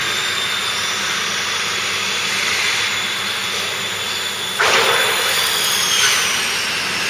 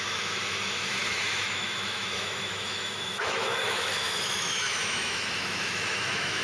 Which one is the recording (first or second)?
first